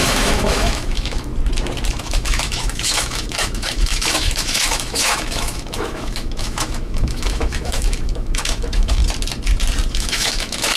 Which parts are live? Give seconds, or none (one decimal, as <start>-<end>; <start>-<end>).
1.3-1.9; 9.0-9.9